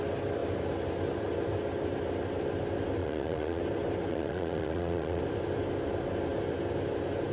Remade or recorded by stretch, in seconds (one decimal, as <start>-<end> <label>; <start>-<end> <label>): 0.0-3.0 recorded; 3.0-3.6 remade; 3.6-4.1 recorded; 4.1-5.2 remade; 5.2-7.3 recorded